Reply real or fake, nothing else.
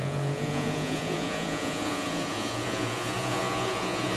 fake